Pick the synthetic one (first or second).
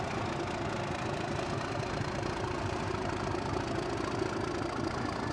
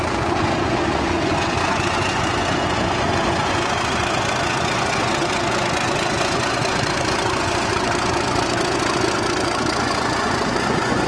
second